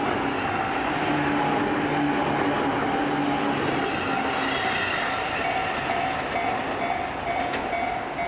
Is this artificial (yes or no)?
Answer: no